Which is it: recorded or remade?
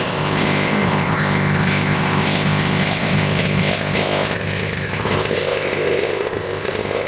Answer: remade